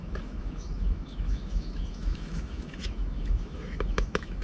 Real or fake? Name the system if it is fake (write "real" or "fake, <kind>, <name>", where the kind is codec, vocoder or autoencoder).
fake, autoencoder, DAC-VAE